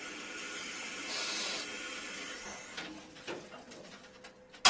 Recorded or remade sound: recorded